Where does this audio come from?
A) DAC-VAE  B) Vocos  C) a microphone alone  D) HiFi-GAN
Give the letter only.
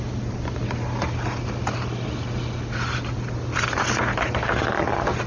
C